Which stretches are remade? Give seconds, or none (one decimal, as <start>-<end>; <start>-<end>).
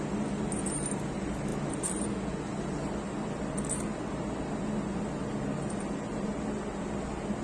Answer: none